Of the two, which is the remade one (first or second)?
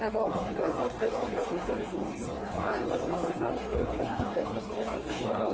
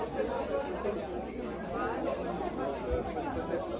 first